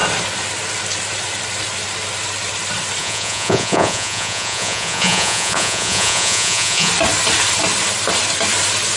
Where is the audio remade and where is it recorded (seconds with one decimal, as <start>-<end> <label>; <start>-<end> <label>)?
0.0-3.0 recorded; 3.0-6.9 remade; 6.9-9.0 recorded